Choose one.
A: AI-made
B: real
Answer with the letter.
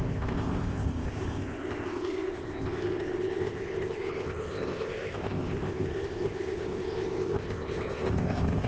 A